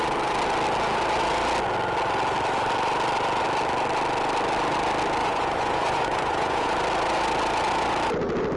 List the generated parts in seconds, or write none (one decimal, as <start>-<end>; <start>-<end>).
5.2-6.7